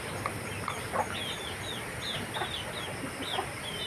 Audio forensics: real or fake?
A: real